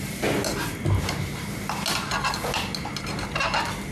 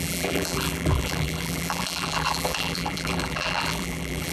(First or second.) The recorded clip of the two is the first